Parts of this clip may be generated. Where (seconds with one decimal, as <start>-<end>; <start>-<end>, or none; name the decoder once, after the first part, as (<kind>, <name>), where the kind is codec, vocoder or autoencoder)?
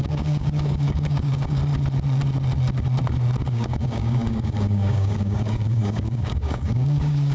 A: 0.0-1.6 (codec, DAC); 3.4-7.3